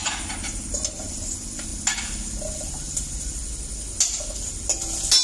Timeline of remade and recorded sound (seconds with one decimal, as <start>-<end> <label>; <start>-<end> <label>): 0.0-5.2 recorded